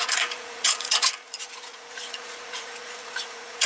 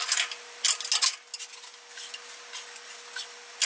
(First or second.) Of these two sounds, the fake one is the first